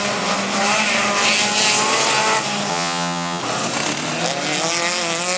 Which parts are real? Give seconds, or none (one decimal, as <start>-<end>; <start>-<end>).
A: 0.0-2.7; 3.4-5.4